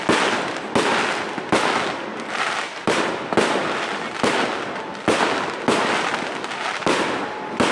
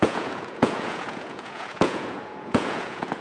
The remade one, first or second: second